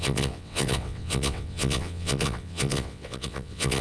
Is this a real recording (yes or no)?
no